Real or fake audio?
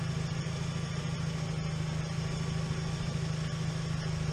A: real